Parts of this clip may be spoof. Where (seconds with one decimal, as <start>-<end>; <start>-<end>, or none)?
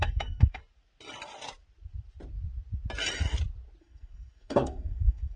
0.0-0.6; 3.8-5.4